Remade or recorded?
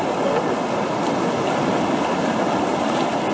recorded